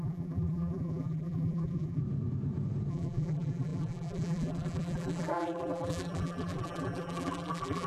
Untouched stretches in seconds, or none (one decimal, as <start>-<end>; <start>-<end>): 2.0-2.9